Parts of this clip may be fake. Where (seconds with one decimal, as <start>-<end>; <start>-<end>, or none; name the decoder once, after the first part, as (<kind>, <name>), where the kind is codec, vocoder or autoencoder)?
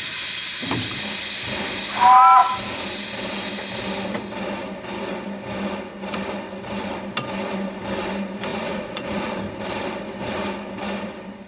8.5-9.3 (vocoder, Vocos)